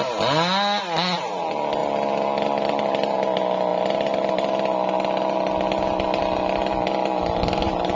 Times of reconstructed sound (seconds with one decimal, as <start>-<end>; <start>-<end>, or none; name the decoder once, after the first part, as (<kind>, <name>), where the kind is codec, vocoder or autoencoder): none